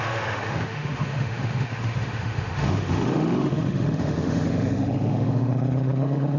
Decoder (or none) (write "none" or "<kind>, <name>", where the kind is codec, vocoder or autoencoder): autoencoder, DAC-VAE